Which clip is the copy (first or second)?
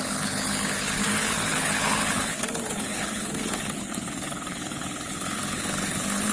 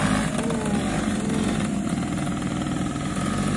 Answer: first